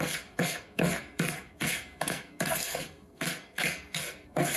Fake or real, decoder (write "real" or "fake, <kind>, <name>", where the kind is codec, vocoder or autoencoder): fake, codec, SNAC